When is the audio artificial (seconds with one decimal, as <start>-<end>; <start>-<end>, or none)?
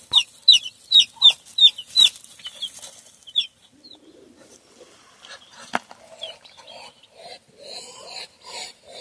none